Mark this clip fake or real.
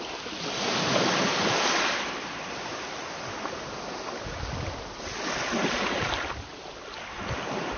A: real